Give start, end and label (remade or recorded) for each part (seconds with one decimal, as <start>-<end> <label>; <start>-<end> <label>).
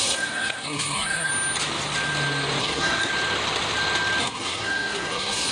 0.0-1.3 remade; 1.3-2.6 recorded; 2.6-3.1 remade; 3.1-4.2 recorded; 4.2-5.5 remade